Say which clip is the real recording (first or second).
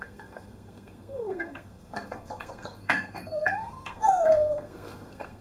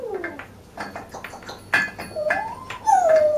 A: second